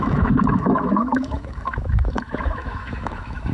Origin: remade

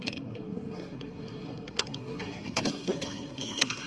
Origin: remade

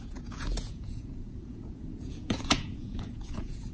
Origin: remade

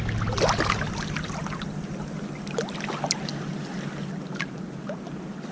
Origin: recorded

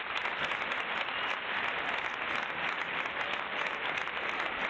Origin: recorded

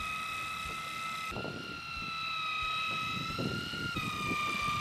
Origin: recorded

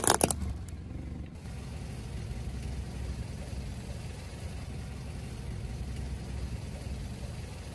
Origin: recorded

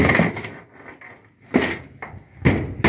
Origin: recorded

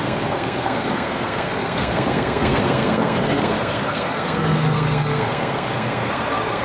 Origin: remade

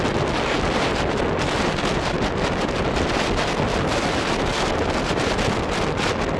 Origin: recorded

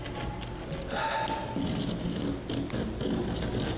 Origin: recorded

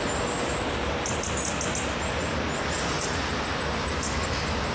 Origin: recorded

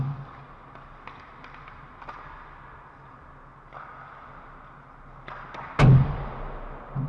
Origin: recorded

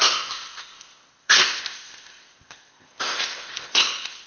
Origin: remade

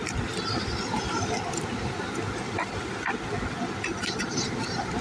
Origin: remade